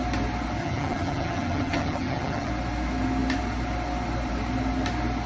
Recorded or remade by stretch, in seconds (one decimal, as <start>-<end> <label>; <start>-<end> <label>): 0.0-0.6 recorded; 0.6-2.5 remade; 2.5-5.3 recorded